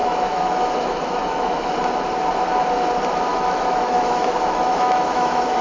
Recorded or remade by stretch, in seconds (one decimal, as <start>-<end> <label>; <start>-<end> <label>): 0.0-1.7 remade; 1.7-3.3 recorded; 3.3-5.6 remade